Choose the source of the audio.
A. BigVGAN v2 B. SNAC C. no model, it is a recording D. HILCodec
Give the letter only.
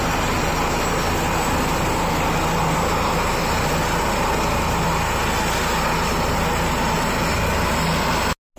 C